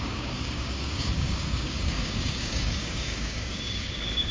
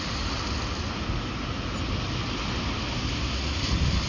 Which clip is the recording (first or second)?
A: second